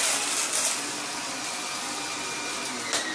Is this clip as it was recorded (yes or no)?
yes